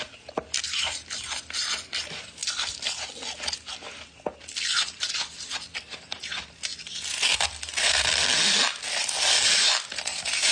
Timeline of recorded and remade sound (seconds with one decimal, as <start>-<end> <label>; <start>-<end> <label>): 0.0-2.4 remade; 2.4-4.4 recorded; 4.4-6.7 remade; 6.7-9.9 recorded; 9.9-10.5 remade